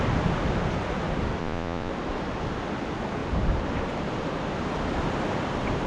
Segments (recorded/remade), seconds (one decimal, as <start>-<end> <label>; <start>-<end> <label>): 0.0-1.4 recorded; 1.4-1.9 remade; 1.9-5.9 recorded